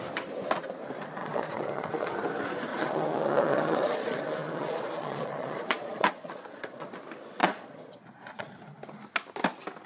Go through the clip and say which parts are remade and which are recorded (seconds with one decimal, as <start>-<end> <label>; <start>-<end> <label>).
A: 0.0-1.2 recorded; 1.2-2.1 remade; 2.1-2.7 recorded; 2.7-6.9 remade; 6.9-7.4 recorded; 7.4-8.6 remade; 8.6-9.9 recorded